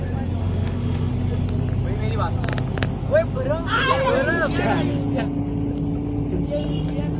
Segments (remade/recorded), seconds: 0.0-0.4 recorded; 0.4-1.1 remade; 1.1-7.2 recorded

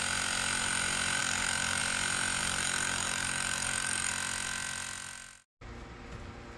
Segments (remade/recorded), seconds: 0.0-1.2 recorded; 1.2-1.8 remade; 1.8-2.4 recorded; 2.4-4.1 remade; 4.1-6.6 recorded

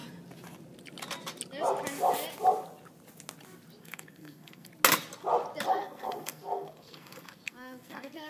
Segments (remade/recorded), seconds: 0.0-3.8 recorded; 3.8-4.7 remade; 4.7-5.7 recorded; 5.7-8.3 remade

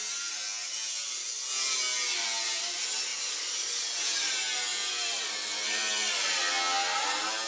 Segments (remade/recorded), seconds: 0.0-3.1 recorded; 3.1-3.9 remade; 3.9-4.7 recorded; 4.7-6.1 remade; 6.1-7.5 recorded

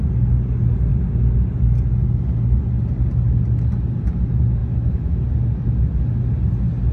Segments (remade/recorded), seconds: 0.0-4.6 recorded; 4.6-5.2 remade; 5.2-6.9 recorded

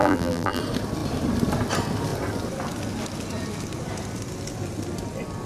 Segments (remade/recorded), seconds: 0.0-0.6 remade; 0.6-5.5 recorded